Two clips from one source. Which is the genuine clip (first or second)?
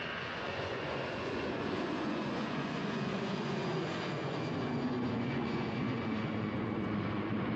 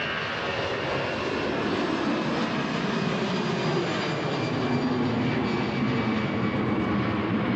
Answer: second